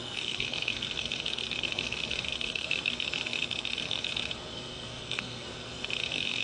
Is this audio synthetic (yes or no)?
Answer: yes